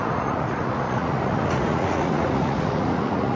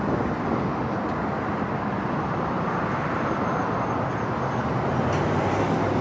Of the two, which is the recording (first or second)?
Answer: second